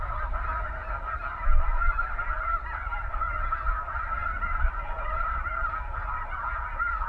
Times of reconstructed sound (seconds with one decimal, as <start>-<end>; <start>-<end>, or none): none